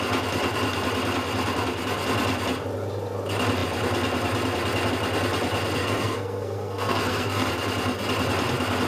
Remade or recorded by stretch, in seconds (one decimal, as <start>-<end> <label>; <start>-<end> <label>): 0.0-5.8 recorded; 5.8-7.5 remade; 7.5-8.9 recorded